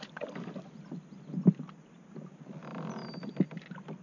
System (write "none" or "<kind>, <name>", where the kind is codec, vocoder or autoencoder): none